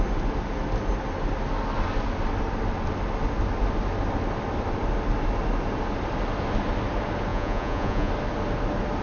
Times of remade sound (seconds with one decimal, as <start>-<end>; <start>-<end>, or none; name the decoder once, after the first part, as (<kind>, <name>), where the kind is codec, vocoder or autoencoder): 7.3-8.1 (vocoder, Vocos)